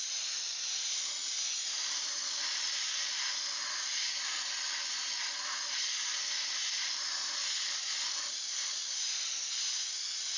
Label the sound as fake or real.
real